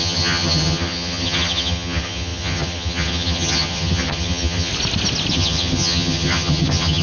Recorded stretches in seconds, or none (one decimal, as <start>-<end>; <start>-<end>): 4.7-5.3